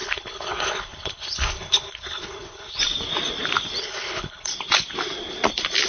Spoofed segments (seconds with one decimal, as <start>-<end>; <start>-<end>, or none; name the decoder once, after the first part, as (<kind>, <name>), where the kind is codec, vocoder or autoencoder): 0.0-2.8 (codec, HILCodec); 3.8-4.5